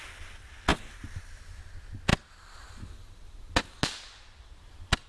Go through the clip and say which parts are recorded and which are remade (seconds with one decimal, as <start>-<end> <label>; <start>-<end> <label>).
0.0-5.1 recorded